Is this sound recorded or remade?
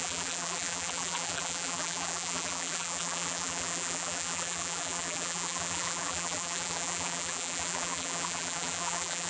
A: remade